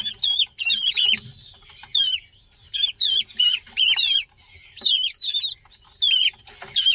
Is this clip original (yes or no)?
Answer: yes